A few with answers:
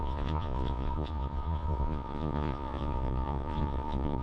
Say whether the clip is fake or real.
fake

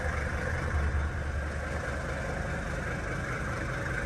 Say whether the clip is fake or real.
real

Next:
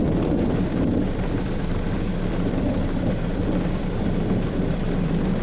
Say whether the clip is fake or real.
fake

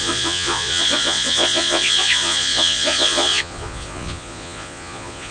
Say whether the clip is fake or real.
fake